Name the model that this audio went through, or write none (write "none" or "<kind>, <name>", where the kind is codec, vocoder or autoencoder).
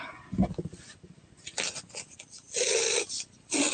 none